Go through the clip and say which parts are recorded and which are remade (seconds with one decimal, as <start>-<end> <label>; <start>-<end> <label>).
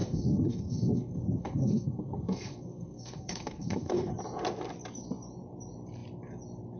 0.0-4.1 remade; 4.1-6.8 recorded